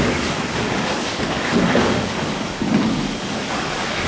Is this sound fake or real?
fake